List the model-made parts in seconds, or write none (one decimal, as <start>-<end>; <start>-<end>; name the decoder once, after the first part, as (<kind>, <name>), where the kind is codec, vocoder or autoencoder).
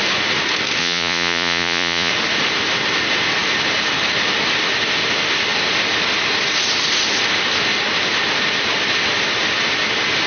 0.8-2.1 (vocoder, Vocos)